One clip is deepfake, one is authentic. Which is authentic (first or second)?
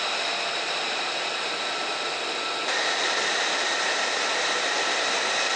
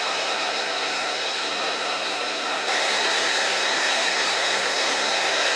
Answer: first